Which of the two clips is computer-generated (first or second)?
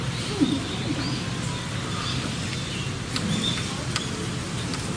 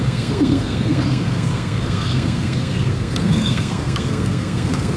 second